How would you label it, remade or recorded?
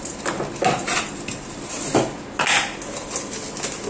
recorded